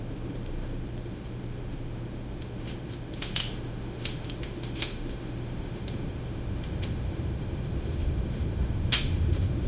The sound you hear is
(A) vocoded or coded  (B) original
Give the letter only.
A